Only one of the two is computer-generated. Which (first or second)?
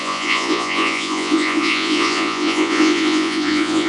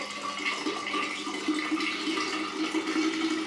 first